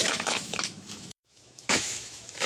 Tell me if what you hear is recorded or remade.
remade